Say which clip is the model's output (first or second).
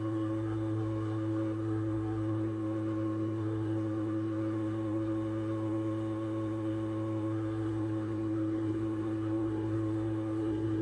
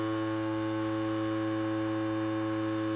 first